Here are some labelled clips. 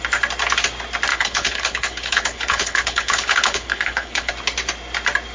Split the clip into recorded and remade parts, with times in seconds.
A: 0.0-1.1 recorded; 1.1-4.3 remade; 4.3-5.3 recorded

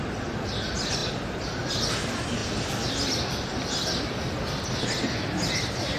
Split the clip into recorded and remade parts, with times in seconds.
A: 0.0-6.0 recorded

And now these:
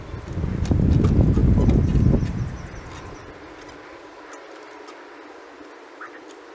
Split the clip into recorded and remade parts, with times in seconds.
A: 0.0-6.5 recorded

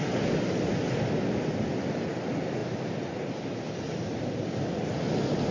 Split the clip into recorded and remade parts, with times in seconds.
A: 0.0-5.5 recorded

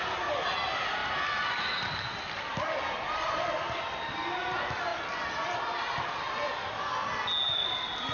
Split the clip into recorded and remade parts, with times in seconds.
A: 0.0-2.5 recorded; 2.5-4.0 remade; 4.0-4.9 recorded; 4.9-6.3 remade; 6.3-8.1 recorded